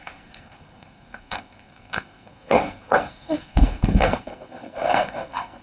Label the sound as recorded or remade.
remade